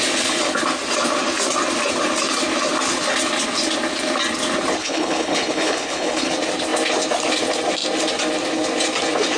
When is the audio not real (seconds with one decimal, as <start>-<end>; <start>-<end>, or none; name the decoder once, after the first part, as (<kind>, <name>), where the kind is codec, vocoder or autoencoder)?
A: 4.8-6.3 (codec, HILCodec)